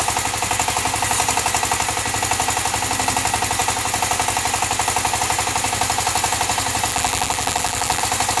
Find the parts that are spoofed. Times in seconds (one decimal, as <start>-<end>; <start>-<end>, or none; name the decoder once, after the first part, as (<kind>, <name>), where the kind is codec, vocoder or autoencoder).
6.9-8.0 (vocoder, BigVGAN v2)